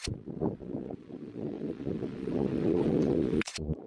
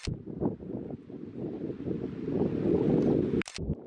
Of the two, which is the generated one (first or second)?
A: first